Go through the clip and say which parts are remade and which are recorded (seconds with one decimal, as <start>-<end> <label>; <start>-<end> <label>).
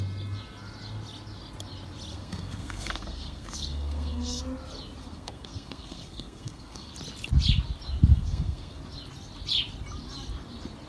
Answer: 0.0-2.1 recorded; 2.1-4.4 remade; 4.4-5.0 recorded; 5.0-6.9 remade; 6.9-8.1 recorded; 8.1-8.8 remade; 8.8-10.9 recorded